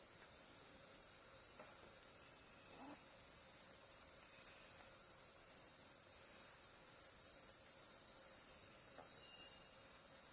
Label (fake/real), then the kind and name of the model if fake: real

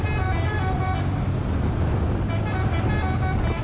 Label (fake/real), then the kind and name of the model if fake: real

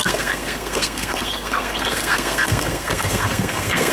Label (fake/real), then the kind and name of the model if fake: fake, codec, SNAC